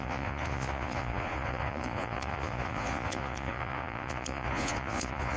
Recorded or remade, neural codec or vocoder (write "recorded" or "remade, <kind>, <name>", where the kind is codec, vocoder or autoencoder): remade, vocoder, Vocos